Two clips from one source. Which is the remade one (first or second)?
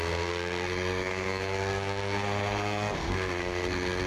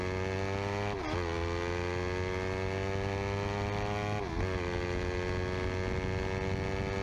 first